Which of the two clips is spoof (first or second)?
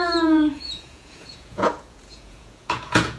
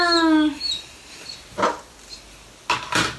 first